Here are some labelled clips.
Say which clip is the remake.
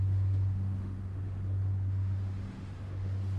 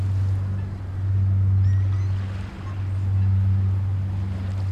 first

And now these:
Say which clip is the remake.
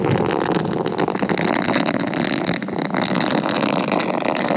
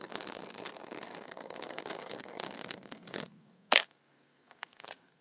second